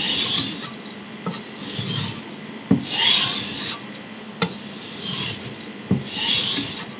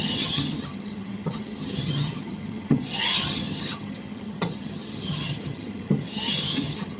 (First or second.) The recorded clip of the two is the first